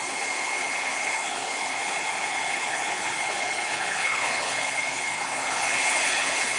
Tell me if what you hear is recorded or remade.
remade